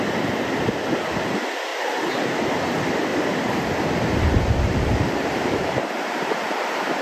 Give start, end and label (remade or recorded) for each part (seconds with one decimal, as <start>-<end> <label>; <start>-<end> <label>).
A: 0.0-1.7 recorded; 1.7-2.4 remade; 2.4-3.1 recorded; 3.1-6.3 remade; 6.3-7.0 recorded